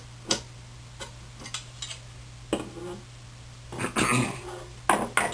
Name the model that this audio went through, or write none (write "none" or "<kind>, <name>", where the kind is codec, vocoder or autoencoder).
none